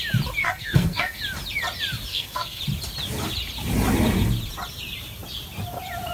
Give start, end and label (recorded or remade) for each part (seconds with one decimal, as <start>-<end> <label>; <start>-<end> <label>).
0.0-0.4 recorded; 0.4-1.2 remade; 1.2-2.1 recorded; 2.1-2.6 remade; 2.6-6.1 recorded